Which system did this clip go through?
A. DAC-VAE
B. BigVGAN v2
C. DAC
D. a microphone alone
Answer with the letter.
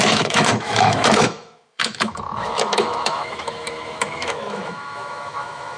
A